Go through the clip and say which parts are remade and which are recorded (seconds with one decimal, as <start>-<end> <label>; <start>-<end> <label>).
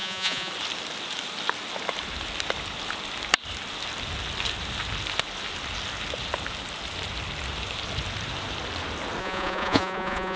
0.0-0.5 remade; 0.5-9.2 recorded; 9.2-10.4 remade